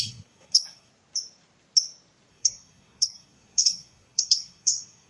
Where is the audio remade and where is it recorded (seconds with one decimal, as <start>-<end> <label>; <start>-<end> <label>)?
0.0-0.9 remade; 0.9-2.3 recorded; 2.3-5.1 remade